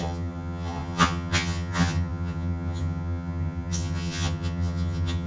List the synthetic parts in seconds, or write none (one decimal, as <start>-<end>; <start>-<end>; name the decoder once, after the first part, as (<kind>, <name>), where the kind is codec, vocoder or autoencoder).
0.0-5.3 (vocoder, HiFi-GAN)